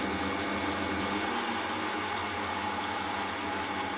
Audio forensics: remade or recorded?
recorded